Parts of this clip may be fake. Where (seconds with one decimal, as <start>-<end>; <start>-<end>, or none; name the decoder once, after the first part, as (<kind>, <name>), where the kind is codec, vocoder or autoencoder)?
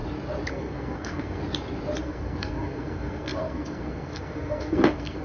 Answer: 0.5-1.4 (codec, SNAC); 2.0-5.2